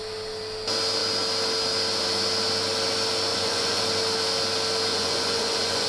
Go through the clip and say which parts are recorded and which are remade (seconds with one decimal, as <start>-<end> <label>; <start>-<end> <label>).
0.0-3.3 recorded; 3.3-3.8 remade; 3.8-4.9 recorded; 4.9-5.9 remade